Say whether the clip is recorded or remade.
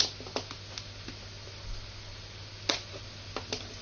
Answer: recorded